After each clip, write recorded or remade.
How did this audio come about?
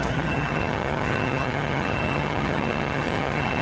remade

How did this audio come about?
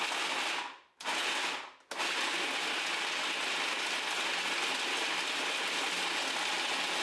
recorded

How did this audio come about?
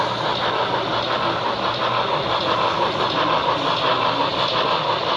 recorded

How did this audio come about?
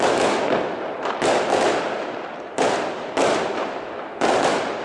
recorded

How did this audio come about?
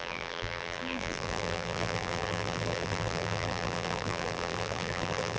remade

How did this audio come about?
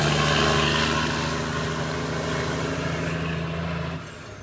recorded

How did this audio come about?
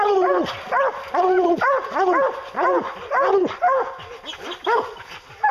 recorded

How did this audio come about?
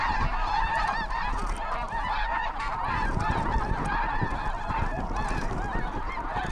recorded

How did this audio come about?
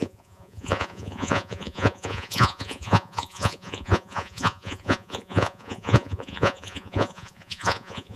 remade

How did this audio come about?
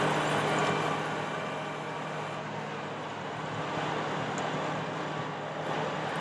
recorded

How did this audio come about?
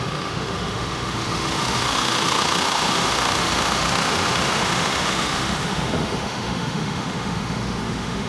remade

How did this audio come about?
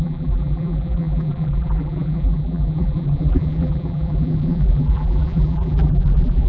remade